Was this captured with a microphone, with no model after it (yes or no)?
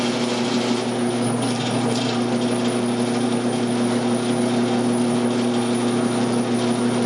yes